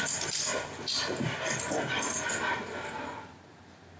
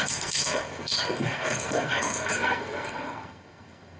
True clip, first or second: first